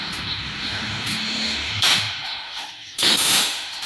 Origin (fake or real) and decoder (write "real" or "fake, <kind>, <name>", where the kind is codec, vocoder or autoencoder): fake, autoencoder, DAC-VAE